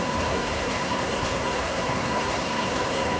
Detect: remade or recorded remade